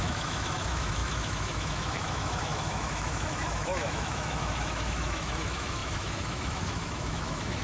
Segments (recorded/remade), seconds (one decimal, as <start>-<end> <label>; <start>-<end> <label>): 0.0-7.6 remade